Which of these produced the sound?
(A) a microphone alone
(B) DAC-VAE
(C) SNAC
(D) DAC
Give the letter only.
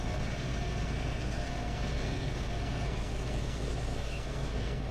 C